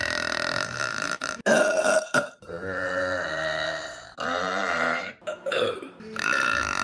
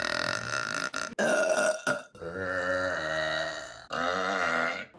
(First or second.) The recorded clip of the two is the second